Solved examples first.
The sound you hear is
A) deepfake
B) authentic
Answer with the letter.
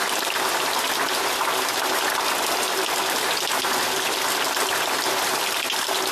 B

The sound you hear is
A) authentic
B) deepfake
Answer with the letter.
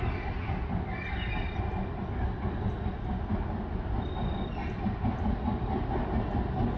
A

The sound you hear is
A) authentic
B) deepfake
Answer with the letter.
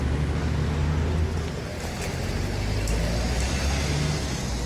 A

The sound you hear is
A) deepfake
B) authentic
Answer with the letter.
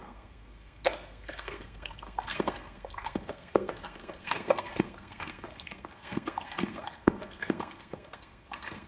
A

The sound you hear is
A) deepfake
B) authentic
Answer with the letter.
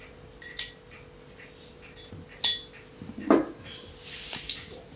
B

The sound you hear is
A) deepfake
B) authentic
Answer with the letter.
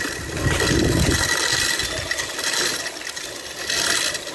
B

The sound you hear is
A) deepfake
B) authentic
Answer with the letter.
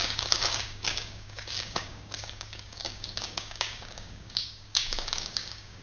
A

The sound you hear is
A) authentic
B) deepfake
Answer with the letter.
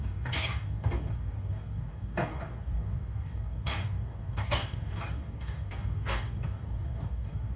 B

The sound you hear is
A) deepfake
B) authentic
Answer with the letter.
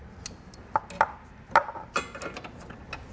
B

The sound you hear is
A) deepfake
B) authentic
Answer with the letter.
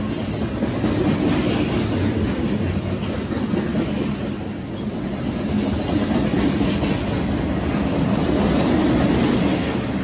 B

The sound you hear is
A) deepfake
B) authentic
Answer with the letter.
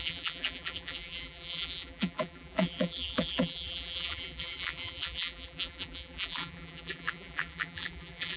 A